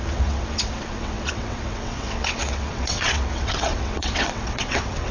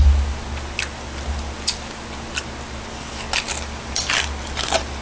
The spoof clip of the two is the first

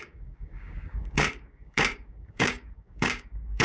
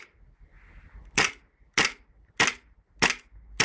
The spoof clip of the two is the first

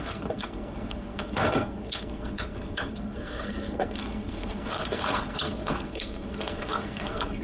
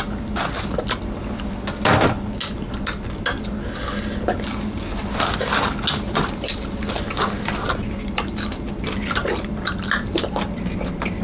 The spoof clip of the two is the first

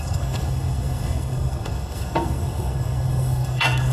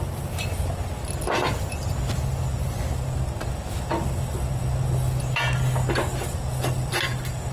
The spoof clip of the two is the first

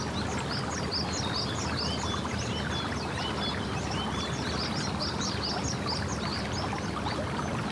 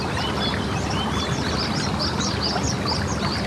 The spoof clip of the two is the second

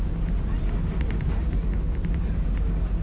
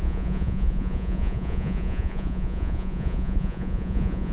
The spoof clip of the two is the second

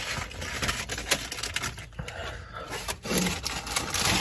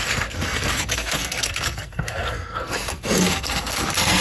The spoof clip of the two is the second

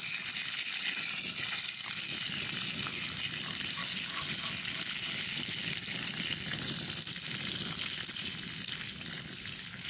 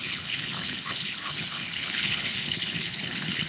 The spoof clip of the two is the second